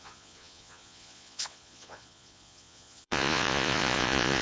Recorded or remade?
remade